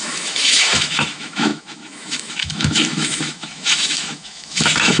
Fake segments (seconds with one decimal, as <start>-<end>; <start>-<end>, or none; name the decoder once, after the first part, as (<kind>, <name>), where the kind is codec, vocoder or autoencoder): 0.0-5.0 (autoencoder, DAC-VAE)